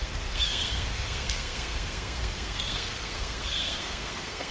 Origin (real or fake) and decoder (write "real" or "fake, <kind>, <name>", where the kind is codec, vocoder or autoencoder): fake, codec, SNAC